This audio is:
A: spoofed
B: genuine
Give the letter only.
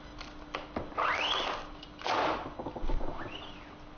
B